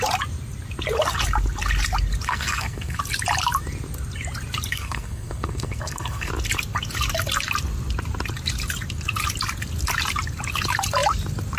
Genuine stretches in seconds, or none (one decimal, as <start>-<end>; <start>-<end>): 0.0-2.3; 3.0-4.7; 6.3-11.6